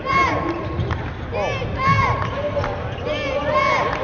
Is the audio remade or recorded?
recorded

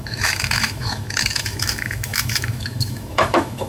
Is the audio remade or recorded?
remade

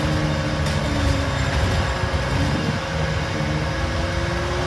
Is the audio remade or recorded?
recorded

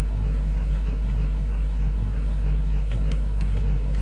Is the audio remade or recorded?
remade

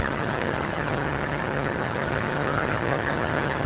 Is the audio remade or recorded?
remade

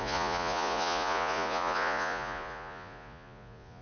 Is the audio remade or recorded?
remade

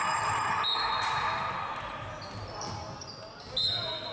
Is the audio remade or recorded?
recorded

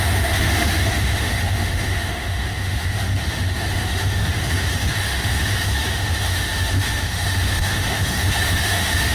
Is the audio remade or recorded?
remade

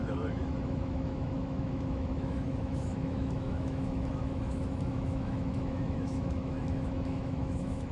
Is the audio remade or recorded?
remade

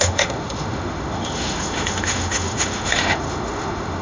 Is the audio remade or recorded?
remade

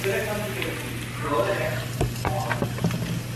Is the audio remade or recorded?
recorded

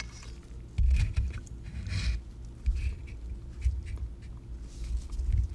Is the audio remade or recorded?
recorded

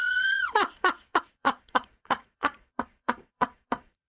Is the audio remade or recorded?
remade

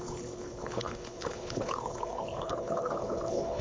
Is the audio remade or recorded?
remade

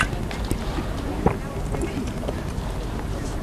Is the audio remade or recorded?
recorded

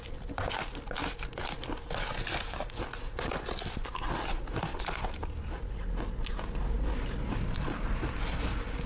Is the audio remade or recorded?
recorded